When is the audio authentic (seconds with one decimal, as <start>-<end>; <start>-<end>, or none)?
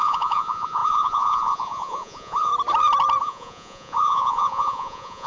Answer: 2.5-3.2